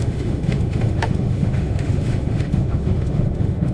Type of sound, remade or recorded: remade